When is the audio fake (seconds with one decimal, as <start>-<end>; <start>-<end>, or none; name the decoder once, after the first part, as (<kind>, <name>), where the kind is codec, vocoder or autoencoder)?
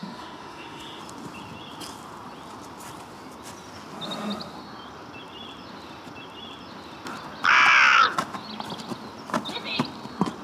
0.0-1.0 (autoencoder, DAC-VAE)